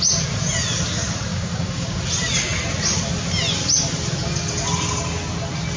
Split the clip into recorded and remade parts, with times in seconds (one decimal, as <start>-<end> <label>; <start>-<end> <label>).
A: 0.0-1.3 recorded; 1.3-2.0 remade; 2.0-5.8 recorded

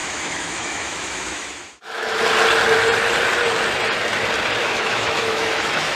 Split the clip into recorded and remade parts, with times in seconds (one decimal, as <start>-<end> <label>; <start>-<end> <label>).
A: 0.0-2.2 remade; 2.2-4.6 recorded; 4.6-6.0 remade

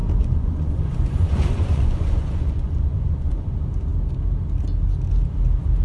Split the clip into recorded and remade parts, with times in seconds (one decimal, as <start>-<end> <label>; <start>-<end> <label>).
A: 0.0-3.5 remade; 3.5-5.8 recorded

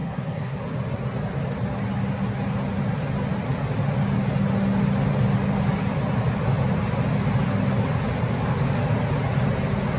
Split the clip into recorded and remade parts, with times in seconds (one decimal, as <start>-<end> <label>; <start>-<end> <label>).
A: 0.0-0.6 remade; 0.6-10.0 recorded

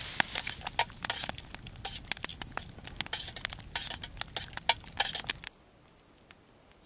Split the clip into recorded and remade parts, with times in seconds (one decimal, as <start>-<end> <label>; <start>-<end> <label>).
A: 0.0-6.9 recorded